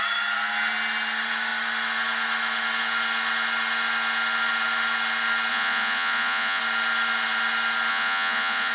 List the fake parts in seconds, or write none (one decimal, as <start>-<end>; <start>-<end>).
5.5-6.6; 7.9-8.7